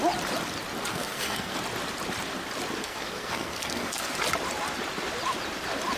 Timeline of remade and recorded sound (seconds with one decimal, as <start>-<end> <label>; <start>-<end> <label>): 0.0-0.9 recorded; 0.9-1.6 remade; 1.6-2.8 recorded; 2.8-4.2 remade; 4.2-6.0 recorded